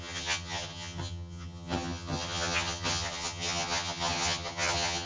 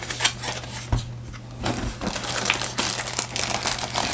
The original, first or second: second